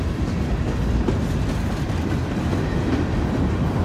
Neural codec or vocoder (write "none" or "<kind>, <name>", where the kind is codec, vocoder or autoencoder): none